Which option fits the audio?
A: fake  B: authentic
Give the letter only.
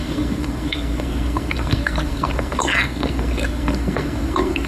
A